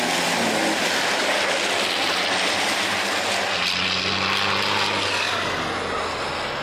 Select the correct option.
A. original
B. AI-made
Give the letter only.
A